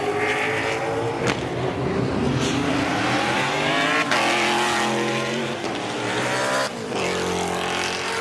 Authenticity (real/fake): real